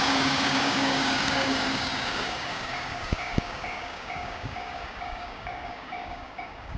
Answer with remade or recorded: remade